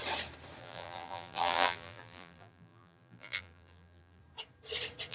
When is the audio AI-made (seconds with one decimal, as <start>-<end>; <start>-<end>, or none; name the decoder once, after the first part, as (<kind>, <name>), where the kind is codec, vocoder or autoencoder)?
0.6-4.2 (vocoder, BigVGAN v2)